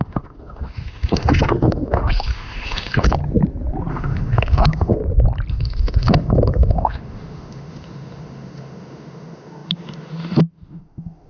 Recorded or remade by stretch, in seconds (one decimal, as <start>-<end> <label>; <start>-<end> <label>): 0.0-3.2 remade; 3.2-3.9 recorded; 3.9-5.0 remade; 5.0-5.5 recorded; 5.5-11.3 remade

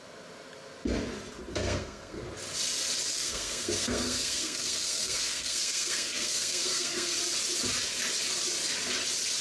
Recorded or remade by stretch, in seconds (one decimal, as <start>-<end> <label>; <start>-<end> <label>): 0.0-1.5 recorded; 1.5-2.2 remade; 2.2-3.1 recorded; 3.1-7.2 remade; 7.2-9.4 recorded